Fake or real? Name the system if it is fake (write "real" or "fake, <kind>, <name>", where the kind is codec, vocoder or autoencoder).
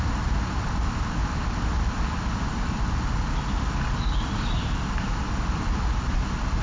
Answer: real